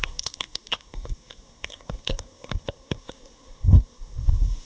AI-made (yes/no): yes